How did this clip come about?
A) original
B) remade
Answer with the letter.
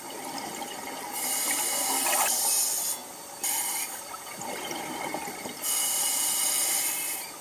A